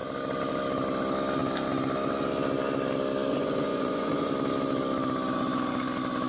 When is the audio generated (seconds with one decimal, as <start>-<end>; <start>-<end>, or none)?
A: 3.3-4.3